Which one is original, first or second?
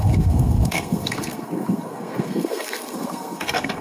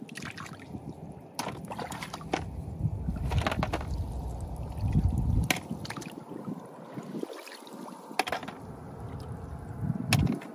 second